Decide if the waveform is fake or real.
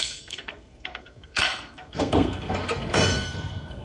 fake